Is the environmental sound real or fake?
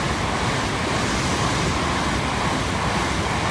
real